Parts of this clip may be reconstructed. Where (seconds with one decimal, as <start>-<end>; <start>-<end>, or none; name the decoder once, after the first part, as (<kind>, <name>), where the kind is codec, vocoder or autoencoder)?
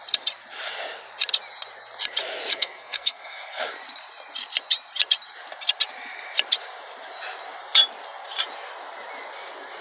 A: 2.5-3.6 (codec, SNAC)